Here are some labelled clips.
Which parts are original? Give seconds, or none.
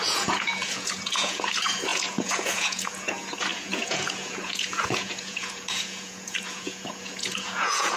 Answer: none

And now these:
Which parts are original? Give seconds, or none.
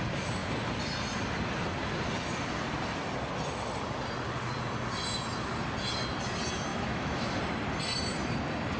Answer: 0.0-6.7; 7.4-8.8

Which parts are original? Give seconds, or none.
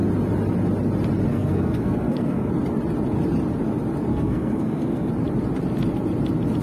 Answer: 0.0-1.3; 2.5-4.1; 5.1-6.6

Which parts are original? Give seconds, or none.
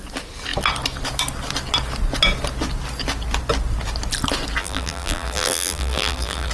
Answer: 0.0-4.6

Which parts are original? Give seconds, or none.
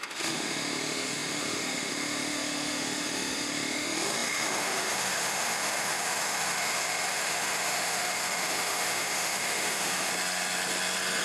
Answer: 10.1-11.2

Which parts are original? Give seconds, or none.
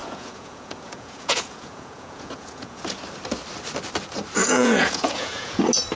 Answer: 2.8-4.4; 5.6-6.0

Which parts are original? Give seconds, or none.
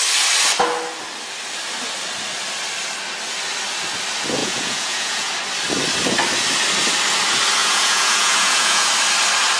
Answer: 0.0-4.4; 5.3-7.6; 8.9-9.6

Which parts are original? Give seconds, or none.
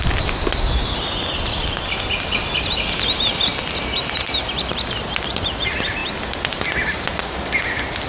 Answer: 0.0-8.1